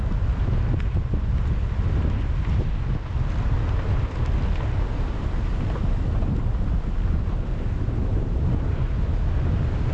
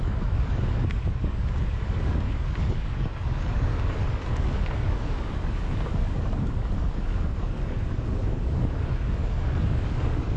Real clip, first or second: first